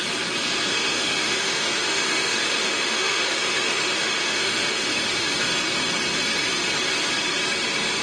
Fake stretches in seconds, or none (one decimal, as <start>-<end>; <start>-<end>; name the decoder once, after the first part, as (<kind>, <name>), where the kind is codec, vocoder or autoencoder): 0.7-5.5 (autoencoder, DAC-VAE)